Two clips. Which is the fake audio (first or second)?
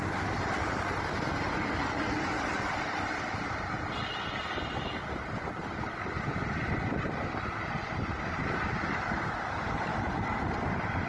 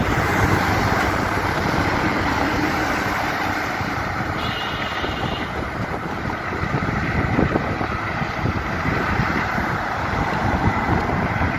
second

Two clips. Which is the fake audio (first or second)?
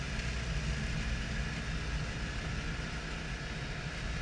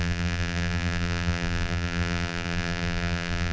second